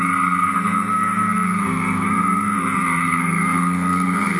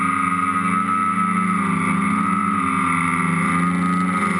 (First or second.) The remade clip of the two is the first